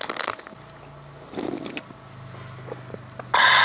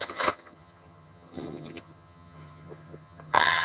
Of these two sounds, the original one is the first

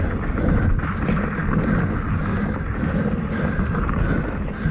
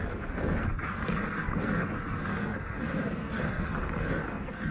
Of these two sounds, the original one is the first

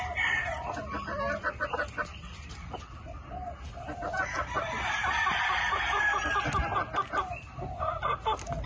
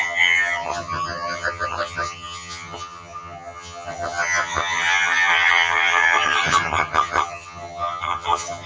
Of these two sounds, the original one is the first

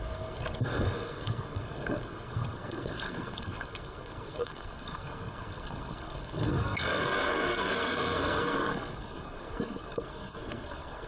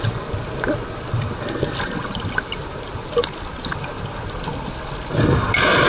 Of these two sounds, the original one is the second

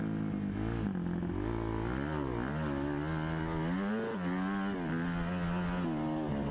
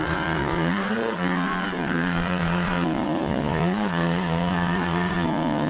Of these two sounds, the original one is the first